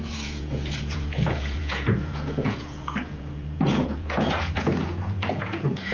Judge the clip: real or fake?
fake